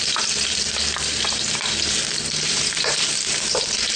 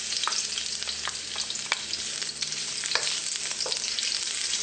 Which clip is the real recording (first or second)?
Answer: second